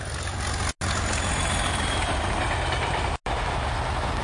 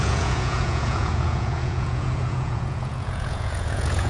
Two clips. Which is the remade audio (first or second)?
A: second